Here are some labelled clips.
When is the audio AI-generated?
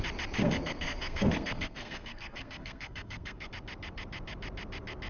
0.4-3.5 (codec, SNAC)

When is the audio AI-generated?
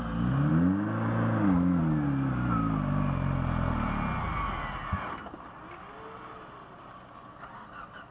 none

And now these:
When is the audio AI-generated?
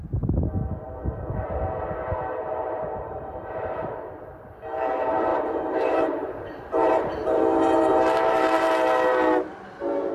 5.3-7.4 (vocoder, BigVGAN v2); 7.9-8.7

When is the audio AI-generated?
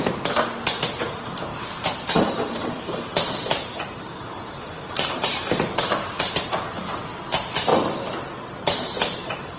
1.5-6.7 (vocoder, BigVGAN v2); 7.7-9.6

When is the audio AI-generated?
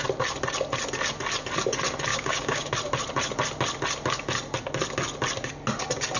2.1-2.7 (codec, DAC)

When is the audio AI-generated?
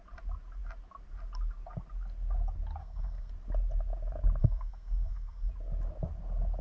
2.8-3.3 (codec, SNAC); 4.4-5.5